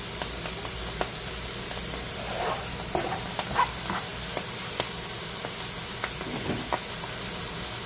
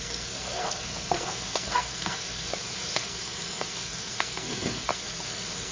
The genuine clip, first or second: first